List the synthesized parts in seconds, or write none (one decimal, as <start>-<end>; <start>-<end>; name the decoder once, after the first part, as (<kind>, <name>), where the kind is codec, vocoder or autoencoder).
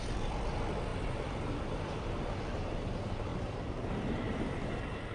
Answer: 3.3-4.5 (vocoder, BigVGAN v2)